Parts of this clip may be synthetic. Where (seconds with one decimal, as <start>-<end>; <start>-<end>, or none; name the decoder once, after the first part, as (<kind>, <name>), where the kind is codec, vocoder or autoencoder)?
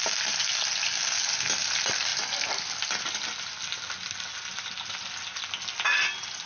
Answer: none